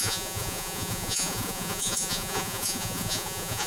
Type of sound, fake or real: fake